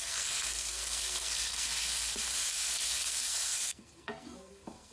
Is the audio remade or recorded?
remade